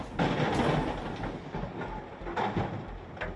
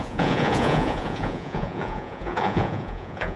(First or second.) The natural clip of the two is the first